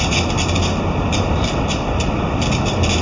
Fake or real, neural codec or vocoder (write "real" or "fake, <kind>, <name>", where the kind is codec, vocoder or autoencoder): real